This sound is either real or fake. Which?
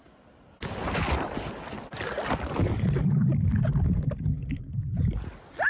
real